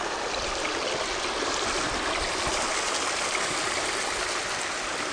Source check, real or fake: real